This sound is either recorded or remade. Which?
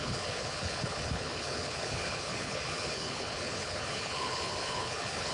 remade